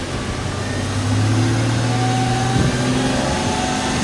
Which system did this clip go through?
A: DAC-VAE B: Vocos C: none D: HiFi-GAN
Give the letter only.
C